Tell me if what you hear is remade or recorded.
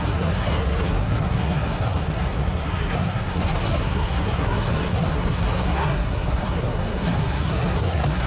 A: remade